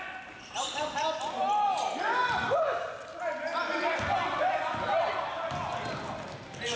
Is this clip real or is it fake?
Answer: real